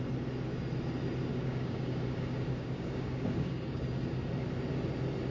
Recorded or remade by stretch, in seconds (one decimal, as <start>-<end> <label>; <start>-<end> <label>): 0.0-1.3 recorded; 1.3-4.3 remade; 4.3-5.3 recorded